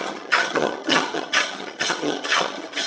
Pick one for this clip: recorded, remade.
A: remade